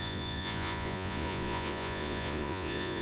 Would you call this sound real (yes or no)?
no